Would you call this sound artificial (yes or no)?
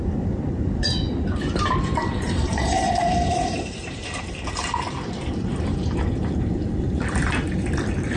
yes